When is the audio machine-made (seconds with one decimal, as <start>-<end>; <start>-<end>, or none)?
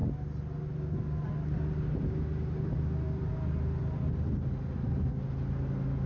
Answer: none